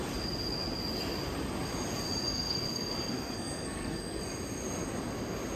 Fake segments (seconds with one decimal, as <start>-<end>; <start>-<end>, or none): 2.2-4.2